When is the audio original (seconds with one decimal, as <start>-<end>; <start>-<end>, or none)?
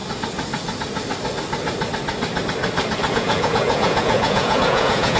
0.0-3.1